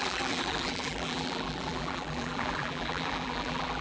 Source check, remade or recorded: remade